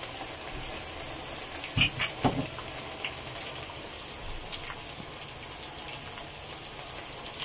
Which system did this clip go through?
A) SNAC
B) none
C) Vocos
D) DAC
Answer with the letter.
B